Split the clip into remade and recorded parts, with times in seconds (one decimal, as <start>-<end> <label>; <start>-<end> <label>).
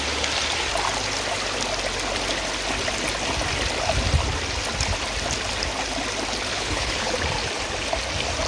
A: 0.0-6.5 recorded; 6.5-7.1 remade; 7.1-8.5 recorded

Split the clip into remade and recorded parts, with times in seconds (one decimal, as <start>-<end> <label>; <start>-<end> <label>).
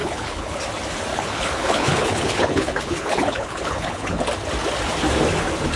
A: 0.0-0.6 remade; 0.6-1.1 recorded; 1.1-4.2 remade; 4.2-5.8 recorded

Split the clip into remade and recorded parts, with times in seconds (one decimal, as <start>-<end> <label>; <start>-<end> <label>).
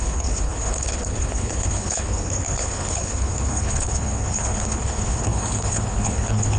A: 0.0-6.6 remade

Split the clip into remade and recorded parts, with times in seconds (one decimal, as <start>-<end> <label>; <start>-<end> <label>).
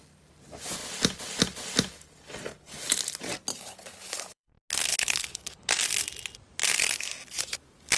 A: 0.0-3.5 recorded; 3.5-4.5 remade; 4.5-4.9 recorded; 4.9-5.7 remade; 5.7-8.0 recorded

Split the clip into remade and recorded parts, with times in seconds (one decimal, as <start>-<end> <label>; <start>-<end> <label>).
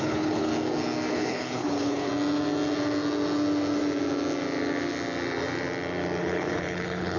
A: 0.0-0.5 remade; 0.5-1.1 recorded; 1.1-2.1 remade; 2.1-6.2 recorded; 6.2-7.2 remade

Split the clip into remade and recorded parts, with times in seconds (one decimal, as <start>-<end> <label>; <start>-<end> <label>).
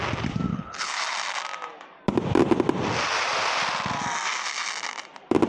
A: 0.0-0.5 recorded; 0.5-1.0 remade; 1.0-5.5 recorded